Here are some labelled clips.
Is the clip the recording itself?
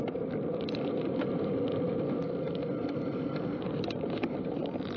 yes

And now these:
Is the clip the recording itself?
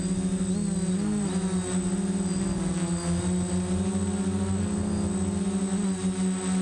yes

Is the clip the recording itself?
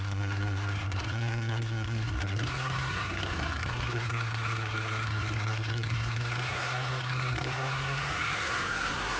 no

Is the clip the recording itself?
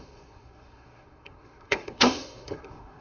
no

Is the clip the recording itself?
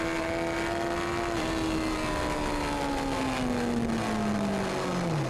yes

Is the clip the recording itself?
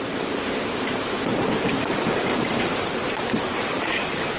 no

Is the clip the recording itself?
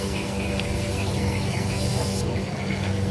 no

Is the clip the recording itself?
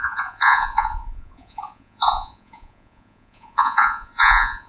no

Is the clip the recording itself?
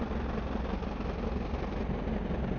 yes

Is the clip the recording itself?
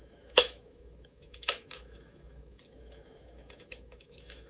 no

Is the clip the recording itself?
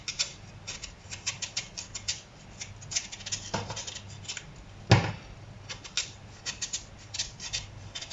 yes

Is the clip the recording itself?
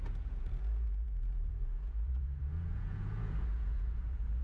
no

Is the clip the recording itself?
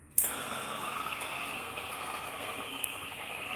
no